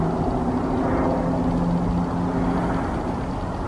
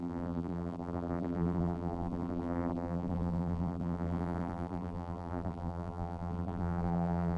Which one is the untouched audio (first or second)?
first